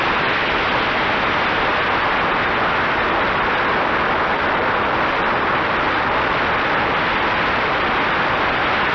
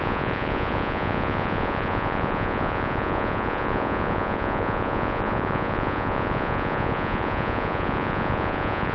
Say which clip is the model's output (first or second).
second